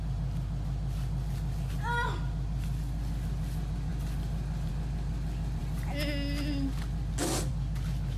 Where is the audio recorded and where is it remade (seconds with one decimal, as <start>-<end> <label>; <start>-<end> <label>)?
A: 0.0-8.2 recorded